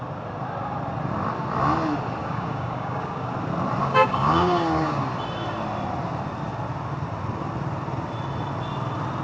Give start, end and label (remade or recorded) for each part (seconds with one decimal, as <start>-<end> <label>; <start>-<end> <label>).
0.0-2.2 recorded; 2.2-3.3 remade; 3.3-3.8 recorded; 3.8-5.0 remade; 5.0-9.2 recorded